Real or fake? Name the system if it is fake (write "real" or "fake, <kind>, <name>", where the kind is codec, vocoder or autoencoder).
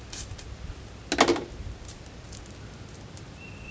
real